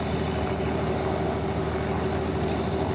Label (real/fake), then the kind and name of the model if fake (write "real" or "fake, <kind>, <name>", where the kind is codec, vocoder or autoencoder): real